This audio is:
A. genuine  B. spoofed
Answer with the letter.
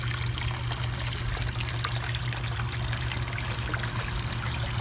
A